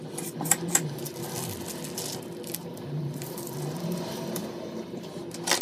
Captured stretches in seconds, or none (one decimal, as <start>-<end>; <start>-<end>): 0.0-2.6; 5.1-5.6